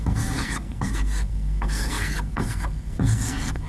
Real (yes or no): no